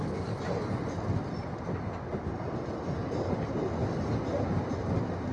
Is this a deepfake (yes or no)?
no